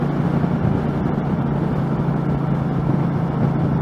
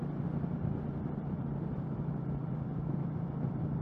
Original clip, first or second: first